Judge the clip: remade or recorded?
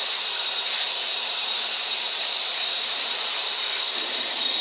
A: remade